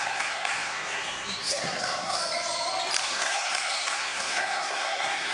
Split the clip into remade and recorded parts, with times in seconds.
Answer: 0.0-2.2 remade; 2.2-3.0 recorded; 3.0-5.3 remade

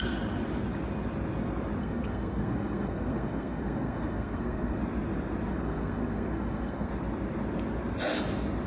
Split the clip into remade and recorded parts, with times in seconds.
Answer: 0.0-1.8 recorded; 1.8-4.8 remade; 4.8-5.5 recorded; 5.5-6.9 remade; 6.9-8.7 recorded

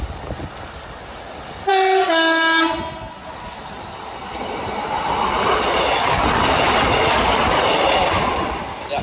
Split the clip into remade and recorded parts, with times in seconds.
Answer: 0.0-9.0 recorded